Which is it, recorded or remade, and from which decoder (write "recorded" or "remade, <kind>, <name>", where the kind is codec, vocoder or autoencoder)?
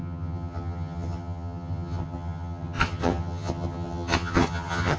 remade, vocoder, HiFi-GAN